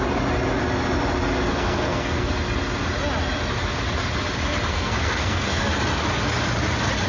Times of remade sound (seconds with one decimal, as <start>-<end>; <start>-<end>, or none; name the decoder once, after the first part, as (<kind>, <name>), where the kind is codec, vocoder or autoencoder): 1.5-2.3 (codec, SNAC); 4.7-5.6